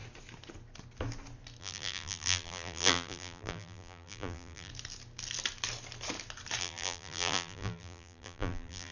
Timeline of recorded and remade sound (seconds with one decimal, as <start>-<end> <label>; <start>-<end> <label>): 0.0-1.6 recorded; 1.6-4.7 remade; 4.7-6.6 recorded; 6.6-8.9 remade